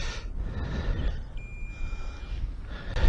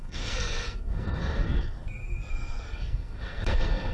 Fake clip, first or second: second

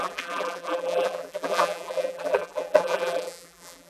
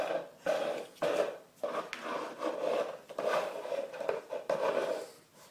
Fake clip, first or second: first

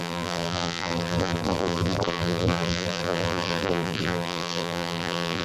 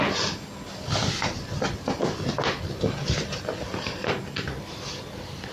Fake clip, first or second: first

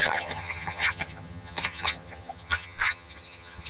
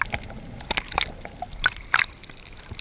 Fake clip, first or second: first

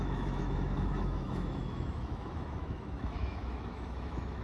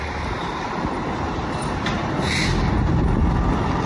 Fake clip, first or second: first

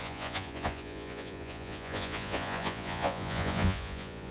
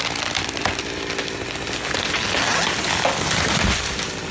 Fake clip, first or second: first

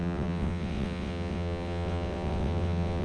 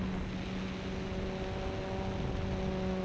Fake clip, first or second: first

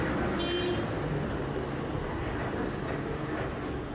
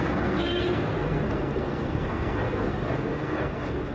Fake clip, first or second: second